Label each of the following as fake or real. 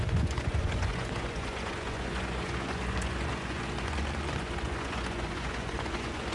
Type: fake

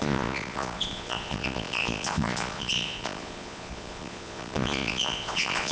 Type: fake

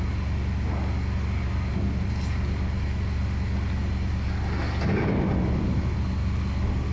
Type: real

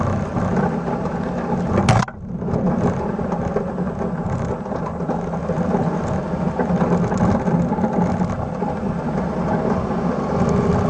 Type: real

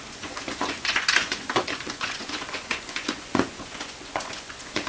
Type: fake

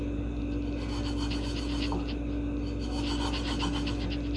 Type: real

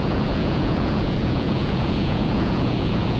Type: fake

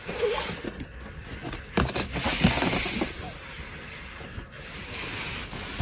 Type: real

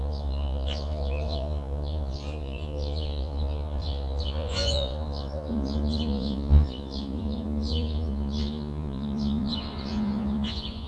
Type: fake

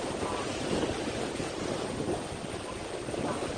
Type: real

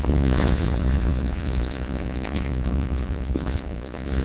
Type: fake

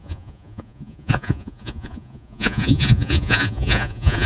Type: fake